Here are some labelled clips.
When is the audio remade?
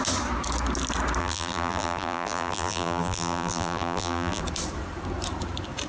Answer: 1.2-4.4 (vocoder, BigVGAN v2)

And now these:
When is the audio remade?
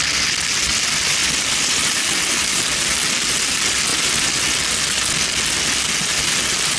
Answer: 1.2-1.8 (vocoder, BigVGAN v2); 3.9-4.6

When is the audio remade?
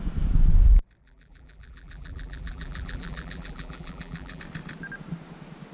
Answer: 1.0-4.4 (vocoder, BigVGAN v2)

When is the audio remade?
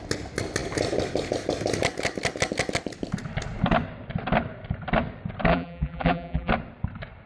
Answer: 5.5-6.5 (vocoder, BigVGAN v2)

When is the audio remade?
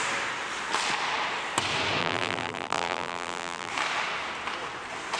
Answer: 2.0-3.7 (vocoder, BigVGAN v2)